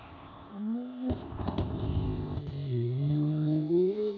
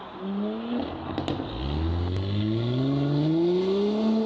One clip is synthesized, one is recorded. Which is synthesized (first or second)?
first